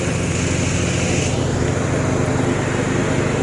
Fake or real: real